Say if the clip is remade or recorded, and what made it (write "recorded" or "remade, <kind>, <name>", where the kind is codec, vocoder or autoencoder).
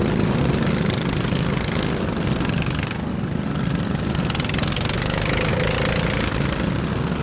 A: recorded